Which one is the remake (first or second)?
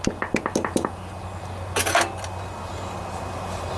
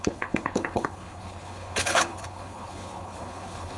second